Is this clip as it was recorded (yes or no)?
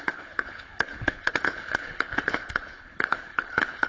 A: no